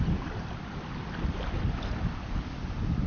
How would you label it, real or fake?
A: real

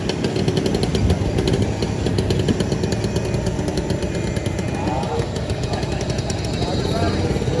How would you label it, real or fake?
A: real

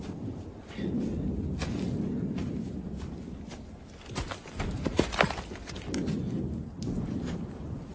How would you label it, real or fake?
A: real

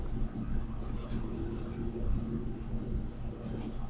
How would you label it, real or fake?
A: real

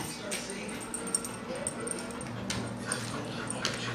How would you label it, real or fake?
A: real